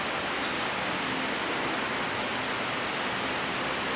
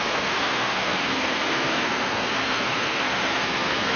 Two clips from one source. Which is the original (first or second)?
first